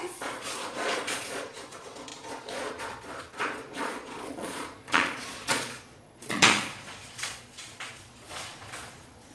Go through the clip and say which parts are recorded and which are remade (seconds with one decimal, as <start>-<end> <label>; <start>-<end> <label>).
0.0-9.3 remade